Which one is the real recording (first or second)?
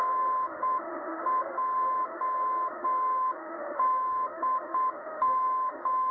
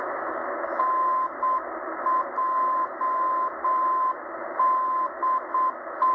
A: second